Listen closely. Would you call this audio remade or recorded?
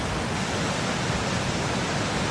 recorded